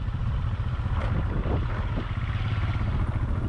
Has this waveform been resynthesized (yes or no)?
no